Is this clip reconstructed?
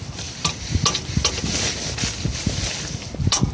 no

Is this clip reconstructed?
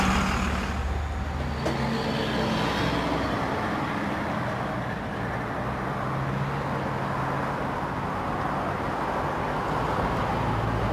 no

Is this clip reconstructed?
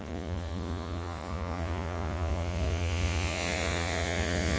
yes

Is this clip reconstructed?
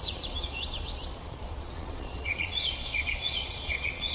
yes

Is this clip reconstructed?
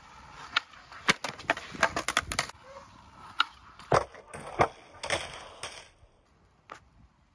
no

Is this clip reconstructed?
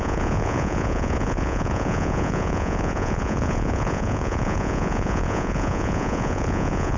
yes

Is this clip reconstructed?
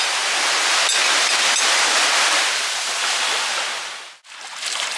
no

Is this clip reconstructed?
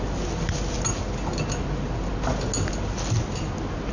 no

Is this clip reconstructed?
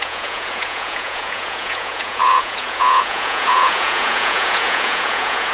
yes